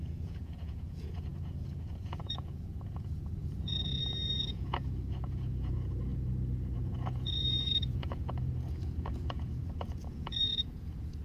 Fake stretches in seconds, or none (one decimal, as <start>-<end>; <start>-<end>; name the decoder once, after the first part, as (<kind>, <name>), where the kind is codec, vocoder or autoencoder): 0.0-11.2 (vocoder, Vocos)